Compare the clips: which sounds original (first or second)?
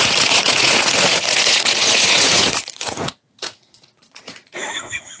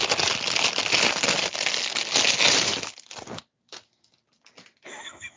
second